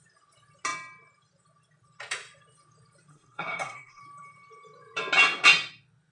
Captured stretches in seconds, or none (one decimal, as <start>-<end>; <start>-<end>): 0.0-3.1; 4.0-6.1